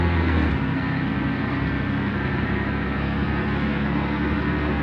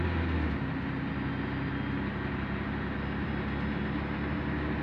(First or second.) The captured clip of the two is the second